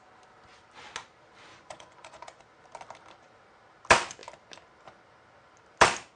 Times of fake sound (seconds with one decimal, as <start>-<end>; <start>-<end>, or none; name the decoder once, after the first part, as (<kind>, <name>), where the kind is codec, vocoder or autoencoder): 1.5-2.4 (vocoder, Vocos)